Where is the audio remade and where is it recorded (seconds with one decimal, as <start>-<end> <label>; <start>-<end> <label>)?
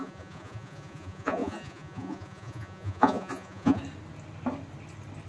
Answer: 0.0-3.8 remade; 3.8-5.3 recorded